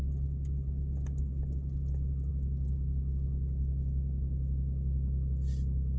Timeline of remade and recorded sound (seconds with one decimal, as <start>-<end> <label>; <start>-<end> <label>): 0.0-6.0 recorded